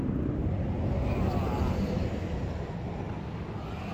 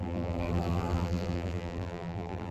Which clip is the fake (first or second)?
second